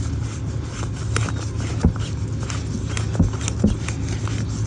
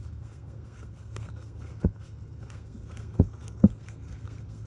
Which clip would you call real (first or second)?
first